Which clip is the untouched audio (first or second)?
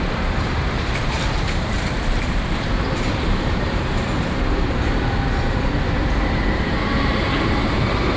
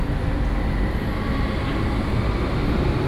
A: second